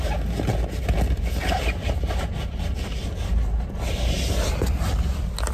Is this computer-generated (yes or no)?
no